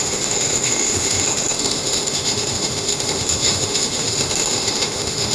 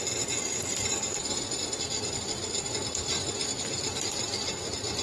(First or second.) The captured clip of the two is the second